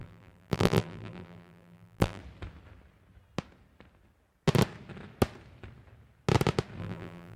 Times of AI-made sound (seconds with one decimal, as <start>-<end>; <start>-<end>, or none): 0.0-2.2; 6.8-7.4